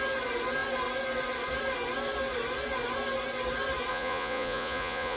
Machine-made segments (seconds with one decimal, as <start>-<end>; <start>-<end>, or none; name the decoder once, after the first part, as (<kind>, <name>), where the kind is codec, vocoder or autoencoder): 3.9-5.2 (vocoder, Vocos)